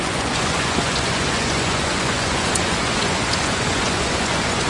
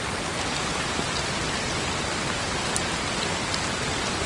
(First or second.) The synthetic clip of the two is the first